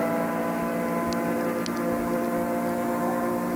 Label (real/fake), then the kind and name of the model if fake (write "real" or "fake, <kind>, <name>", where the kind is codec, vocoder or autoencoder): real